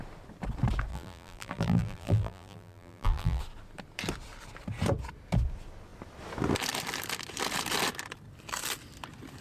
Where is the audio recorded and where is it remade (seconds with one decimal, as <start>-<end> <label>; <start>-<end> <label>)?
0.0-0.9 recorded; 0.9-3.4 remade; 3.4-9.4 recorded